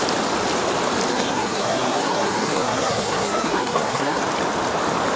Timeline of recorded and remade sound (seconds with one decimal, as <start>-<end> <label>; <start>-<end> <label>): 0.0-1.1 recorded; 1.1-4.2 remade; 4.2-5.2 recorded